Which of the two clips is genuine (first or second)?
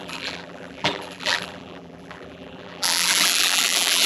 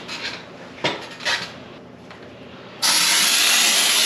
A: second